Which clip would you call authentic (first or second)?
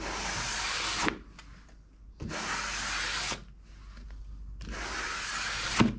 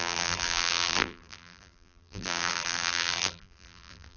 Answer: first